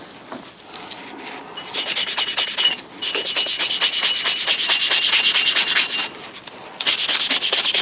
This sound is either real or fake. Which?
real